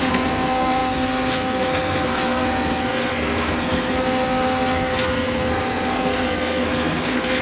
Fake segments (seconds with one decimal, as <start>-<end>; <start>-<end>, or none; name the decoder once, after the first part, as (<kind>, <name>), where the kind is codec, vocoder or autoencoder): 0.0-7.4 (codec, SNAC)